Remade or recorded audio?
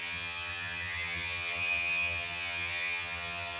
remade